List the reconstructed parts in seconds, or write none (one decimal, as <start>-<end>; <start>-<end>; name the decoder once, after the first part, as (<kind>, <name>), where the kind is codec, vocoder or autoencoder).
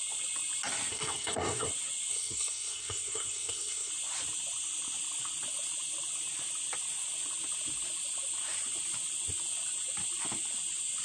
0.9-1.7 (codec, SNAC); 2.1-3.9